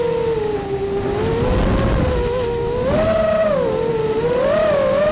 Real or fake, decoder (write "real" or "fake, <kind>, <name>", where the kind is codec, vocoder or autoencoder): real